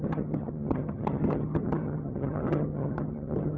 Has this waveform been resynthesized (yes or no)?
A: yes